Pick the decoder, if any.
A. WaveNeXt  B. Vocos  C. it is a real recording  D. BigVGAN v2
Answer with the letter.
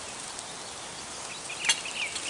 C